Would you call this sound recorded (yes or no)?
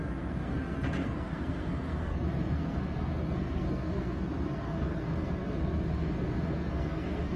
no